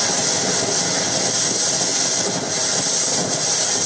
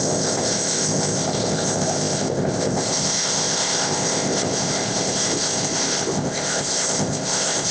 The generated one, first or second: second